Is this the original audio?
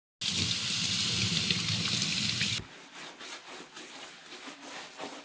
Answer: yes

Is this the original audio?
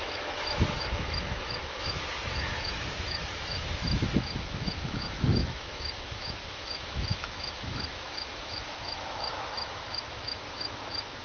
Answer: no